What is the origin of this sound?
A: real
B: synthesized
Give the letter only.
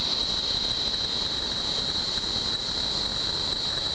A